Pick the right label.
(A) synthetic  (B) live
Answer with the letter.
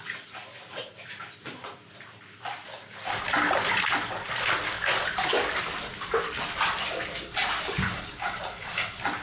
B